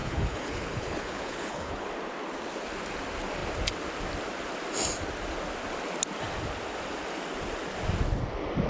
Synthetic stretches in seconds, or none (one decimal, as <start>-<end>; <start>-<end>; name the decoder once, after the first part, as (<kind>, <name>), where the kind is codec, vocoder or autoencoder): 0.0-1.9 (codec, HILCodec)